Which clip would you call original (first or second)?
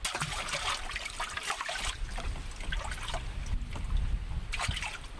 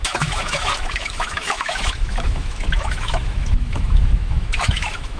first